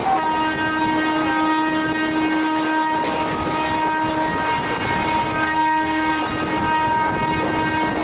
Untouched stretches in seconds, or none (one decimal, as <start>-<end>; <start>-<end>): 0.0-5.2; 6.2-8.0

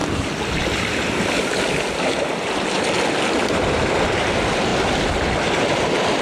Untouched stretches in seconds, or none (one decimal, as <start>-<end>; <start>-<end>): 0.0-6.2

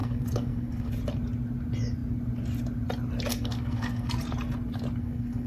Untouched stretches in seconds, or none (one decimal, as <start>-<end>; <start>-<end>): 0.9-3.3; 4.1-5.0

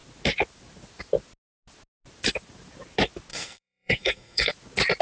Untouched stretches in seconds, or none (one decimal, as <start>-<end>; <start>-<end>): 0.0-3.3; 4.5-5.0

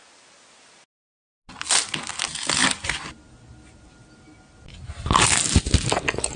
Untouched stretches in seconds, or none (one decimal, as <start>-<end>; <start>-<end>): 0.0-6.4

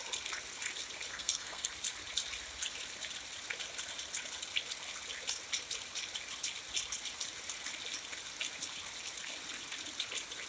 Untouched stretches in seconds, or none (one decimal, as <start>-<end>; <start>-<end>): 0.0-1.1; 1.7-10.5

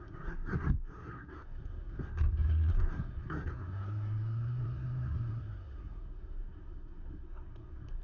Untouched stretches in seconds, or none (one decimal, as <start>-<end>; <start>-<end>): none